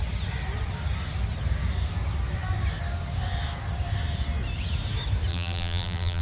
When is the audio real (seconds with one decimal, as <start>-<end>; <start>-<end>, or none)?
0.0-5.3